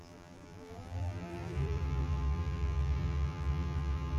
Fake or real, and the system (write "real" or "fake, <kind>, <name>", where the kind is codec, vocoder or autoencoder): fake, vocoder, BigVGAN v2